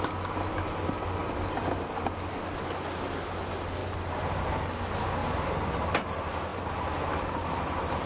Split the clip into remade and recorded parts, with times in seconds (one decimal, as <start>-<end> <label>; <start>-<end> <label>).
0.0-1.2 recorded; 1.2-2.3 remade; 2.3-3.8 recorded; 3.8-4.5 remade; 4.5-5.2 recorded; 5.2-6.1 remade; 6.1-6.5 recorded; 6.5-8.1 remade